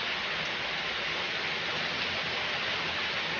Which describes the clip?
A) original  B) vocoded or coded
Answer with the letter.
A